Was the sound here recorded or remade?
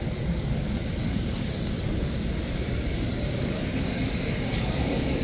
remade